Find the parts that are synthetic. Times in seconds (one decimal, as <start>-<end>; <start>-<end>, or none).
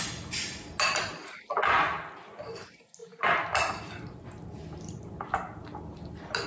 none